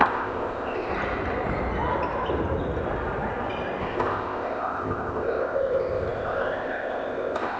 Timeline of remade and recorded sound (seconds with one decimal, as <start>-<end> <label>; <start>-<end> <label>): 0.0-0.9 remade; 0.9-3.8 recorded; 3.8-7.6 remade